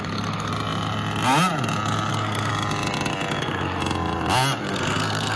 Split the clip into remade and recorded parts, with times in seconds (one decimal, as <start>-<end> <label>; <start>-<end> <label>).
0.0-0.5 remade; 0.5-2.1 recorded; 2.1-2.5 remade; 2.5-3.4 recorded; 3.4-3.8 remade; 3.8-4.6 recorded; 4.6-5.4 remade